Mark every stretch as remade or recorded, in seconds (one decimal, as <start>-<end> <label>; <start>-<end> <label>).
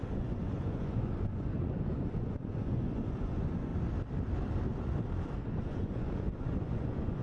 0.0-3.7 remade; 3.7-5.6 recorded; 5.6-7.2 remade